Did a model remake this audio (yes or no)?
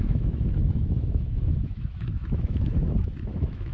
yes